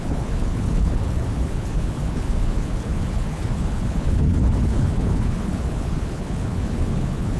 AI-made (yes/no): yes